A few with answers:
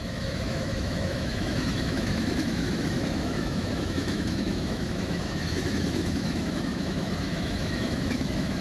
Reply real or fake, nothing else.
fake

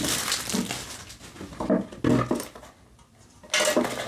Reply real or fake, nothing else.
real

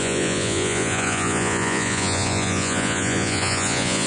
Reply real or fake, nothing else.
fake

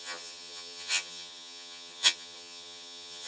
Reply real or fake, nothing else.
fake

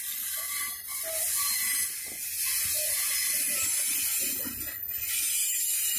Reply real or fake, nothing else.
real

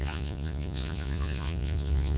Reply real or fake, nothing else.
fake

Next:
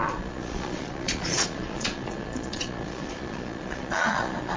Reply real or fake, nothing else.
fake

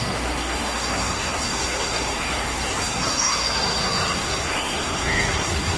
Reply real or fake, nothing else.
fake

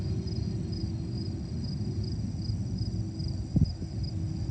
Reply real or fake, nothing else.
real